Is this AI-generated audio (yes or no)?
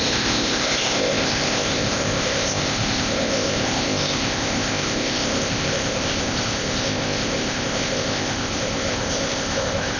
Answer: yes